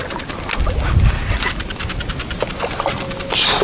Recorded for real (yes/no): yes